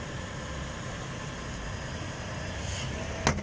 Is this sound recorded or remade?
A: recorded